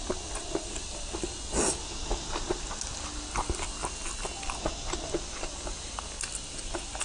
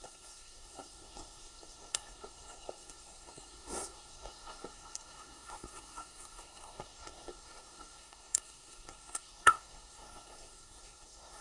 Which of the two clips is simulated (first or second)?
second